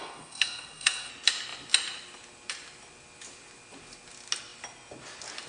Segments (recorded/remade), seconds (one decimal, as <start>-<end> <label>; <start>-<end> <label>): 0.0-1.1 remade; 1.1-5.5 recorded